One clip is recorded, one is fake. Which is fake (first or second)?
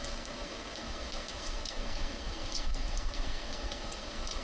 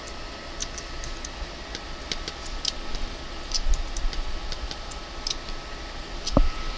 first